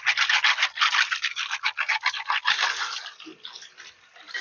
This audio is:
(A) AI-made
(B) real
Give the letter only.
B